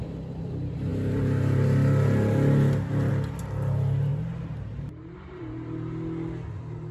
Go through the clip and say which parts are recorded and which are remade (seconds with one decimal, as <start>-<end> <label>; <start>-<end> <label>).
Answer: 0.0-4.1 recorded; 4.1-5.4 remade; 5.4-6.9 recorded